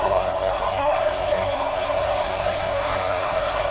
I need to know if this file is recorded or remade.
remade